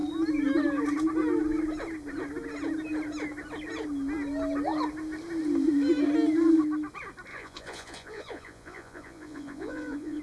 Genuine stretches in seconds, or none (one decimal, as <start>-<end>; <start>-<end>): 0.0-7.3